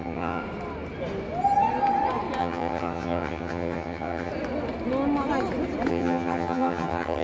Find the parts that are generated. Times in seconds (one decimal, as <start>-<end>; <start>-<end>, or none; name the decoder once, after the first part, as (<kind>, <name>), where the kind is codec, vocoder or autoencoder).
0.0-0.4 (vocoder, HiFi-GAN); 2.4-4.3; 5.9-7.2